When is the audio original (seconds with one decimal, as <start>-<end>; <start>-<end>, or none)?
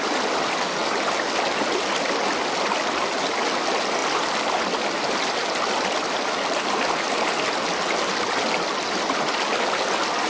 0.0-10.3